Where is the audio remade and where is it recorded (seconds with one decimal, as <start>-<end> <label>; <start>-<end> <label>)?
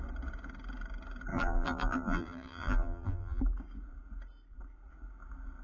0.0-1.3 recorded; 1.3-3.4 remade; 3.4-5.6 recorded